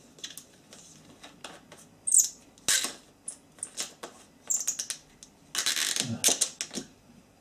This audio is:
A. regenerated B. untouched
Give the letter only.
B